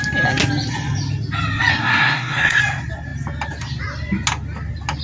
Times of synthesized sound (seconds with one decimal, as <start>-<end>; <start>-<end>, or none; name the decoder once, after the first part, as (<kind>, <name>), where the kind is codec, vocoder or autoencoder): 1.7-2.6 (codec, SNAC)